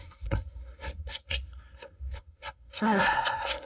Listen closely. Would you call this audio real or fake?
fake